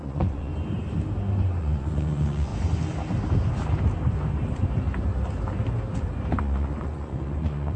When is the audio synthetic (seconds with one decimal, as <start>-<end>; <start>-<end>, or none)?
0.0-0.5; 1.6-2.5; 6.4-7.8